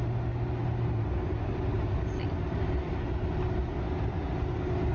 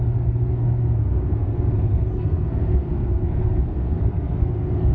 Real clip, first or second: first